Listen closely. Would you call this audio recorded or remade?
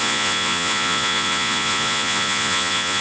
remade